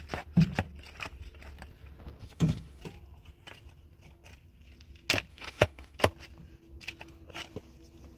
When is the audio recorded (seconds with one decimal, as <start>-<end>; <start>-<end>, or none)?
0.0-2.2; 2.8-5.3; 6.0-8.2